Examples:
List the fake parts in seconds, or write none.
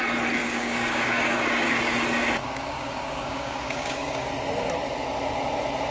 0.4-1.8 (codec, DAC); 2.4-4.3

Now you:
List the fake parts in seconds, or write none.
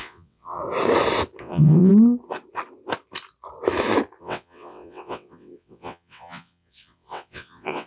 0.0-0.6 (vocoder, WaveNeXt); 1.4-1.9; 4.2-7.9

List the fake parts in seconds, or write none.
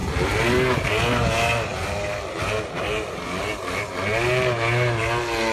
none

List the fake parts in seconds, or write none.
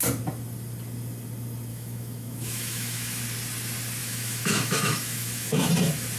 1.7-3.2 (autoencoder, DAC-VAE); 4.0-5.7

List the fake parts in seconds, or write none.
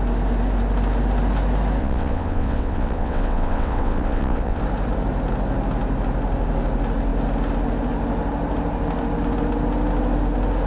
1.8-4.6 (vocoder, WaveNeXt)